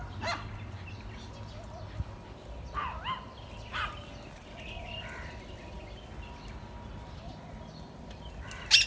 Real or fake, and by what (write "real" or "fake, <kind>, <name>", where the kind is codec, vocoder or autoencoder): real